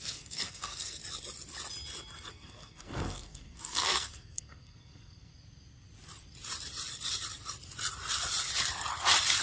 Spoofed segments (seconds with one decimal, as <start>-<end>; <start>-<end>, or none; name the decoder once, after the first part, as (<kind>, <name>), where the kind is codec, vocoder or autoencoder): 0.0-1.0 (codec, SNAC); 2.3-5.3